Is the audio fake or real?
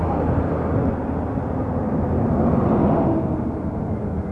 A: real